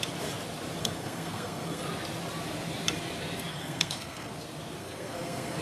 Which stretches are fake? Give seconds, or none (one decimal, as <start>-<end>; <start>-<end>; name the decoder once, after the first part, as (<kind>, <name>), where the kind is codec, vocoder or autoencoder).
0.8-1.8 (codec, SNAC); 3.5-4.3; 4.8-5.6